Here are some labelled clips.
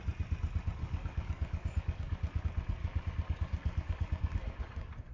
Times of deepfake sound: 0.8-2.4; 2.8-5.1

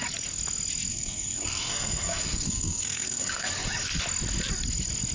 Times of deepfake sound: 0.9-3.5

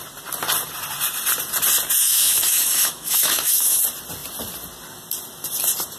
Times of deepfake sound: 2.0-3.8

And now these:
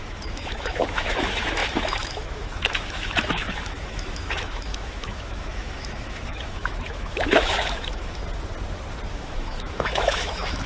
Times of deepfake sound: 0.0-8.2; 9.1-10.7